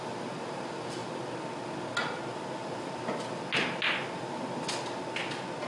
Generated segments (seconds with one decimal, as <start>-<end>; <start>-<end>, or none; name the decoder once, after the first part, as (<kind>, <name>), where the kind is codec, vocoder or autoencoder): none